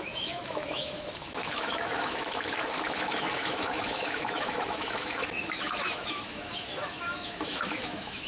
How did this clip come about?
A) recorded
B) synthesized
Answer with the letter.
B